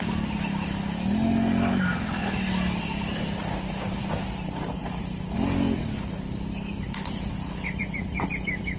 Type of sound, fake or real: real